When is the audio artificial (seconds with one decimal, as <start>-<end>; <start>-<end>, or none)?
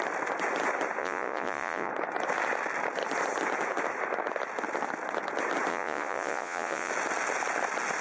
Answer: 1.0-1.9; 5.7-6.9